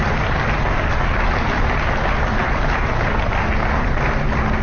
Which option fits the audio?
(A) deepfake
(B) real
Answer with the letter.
B